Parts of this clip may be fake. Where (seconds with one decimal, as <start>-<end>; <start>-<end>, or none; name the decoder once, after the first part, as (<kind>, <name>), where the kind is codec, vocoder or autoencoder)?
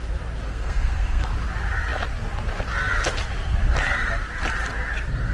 0.5-1.3 (codec, SNAC)